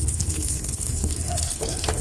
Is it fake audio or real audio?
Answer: fake